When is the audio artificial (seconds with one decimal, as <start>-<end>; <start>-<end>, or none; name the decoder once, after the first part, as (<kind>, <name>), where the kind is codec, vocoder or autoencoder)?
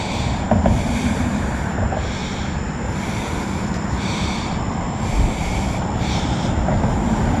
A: 0.0-7.4 (vocoder, BigVGAN v2)